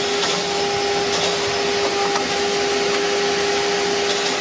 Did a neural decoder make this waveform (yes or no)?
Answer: no